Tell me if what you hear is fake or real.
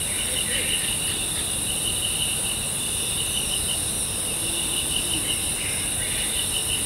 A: real